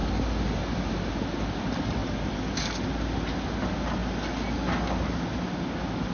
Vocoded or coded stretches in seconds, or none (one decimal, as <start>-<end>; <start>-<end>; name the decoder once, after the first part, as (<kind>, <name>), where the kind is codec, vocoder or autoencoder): none